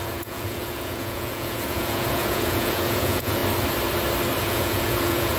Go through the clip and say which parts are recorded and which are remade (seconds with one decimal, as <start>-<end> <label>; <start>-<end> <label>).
0.0-3.4 remade; 3.4-4.4 recorded; 4.4-5.4 remade